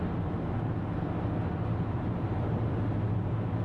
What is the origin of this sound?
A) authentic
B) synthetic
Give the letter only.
A